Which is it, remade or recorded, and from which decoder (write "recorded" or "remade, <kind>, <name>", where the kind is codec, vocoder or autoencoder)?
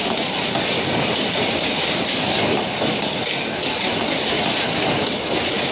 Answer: recorded